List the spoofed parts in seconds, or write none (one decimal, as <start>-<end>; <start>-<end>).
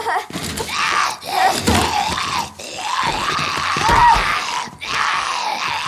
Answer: none